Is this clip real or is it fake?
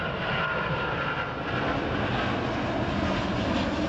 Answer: real